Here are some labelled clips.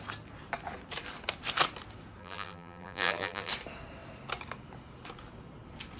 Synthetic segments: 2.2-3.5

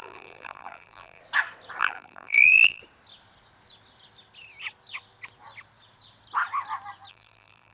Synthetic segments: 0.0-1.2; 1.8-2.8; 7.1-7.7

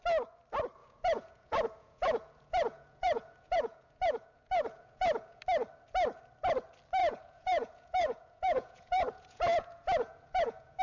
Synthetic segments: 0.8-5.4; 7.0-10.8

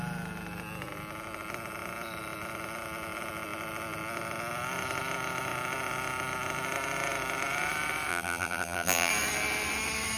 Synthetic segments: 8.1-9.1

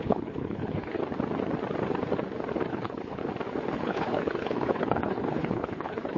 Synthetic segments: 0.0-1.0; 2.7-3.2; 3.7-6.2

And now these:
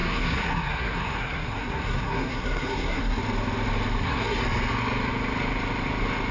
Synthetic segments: 0.0-3.2; 4.0-4.4